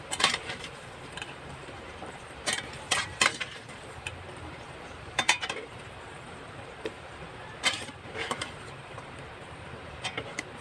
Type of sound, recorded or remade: remade